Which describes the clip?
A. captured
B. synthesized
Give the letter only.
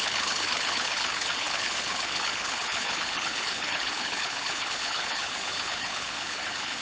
B